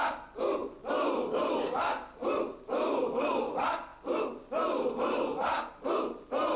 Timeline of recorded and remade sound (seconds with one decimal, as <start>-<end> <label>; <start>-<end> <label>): 0.0-6.6 recorded